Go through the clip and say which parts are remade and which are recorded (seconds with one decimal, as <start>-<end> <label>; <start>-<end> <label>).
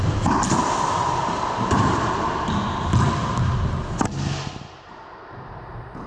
0.0-6.1 recorded